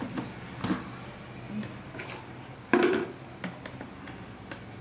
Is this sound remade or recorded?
recorded